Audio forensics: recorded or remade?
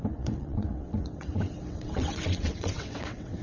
remade